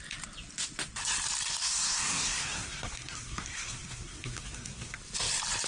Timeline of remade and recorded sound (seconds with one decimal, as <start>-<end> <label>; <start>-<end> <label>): 0.0-1.6 recorded; 1.6-5.0 remade; 5.0-5.7 recorded